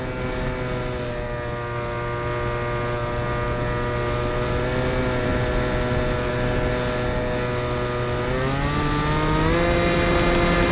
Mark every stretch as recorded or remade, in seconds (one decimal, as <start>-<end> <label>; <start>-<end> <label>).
0.0-10.7 recorded